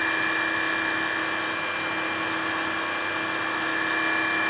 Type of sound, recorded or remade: recorded